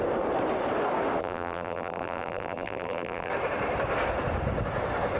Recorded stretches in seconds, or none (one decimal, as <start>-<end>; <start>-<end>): 0.0-1.2; 3.3-5.2